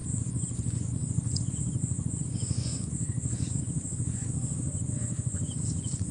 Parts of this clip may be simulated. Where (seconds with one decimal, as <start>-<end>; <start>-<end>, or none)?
0.0-6.1